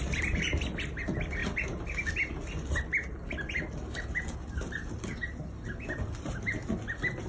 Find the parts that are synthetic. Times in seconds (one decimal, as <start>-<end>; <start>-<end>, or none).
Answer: none